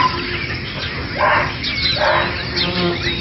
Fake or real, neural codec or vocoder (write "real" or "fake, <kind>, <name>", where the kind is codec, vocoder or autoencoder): real